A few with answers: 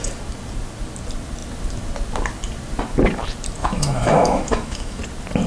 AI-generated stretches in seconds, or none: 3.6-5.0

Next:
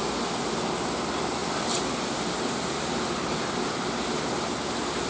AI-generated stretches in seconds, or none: none

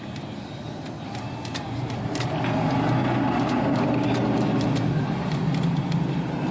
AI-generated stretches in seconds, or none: none

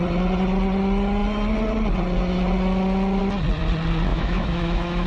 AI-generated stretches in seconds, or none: 4.1-5.1

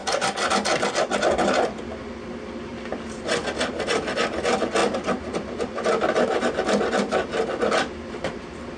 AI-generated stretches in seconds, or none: none

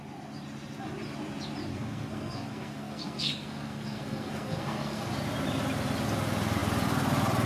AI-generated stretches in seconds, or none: 1.7-5.1